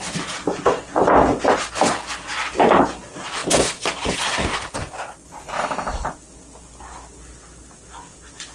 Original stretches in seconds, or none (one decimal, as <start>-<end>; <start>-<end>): 0.0-8.5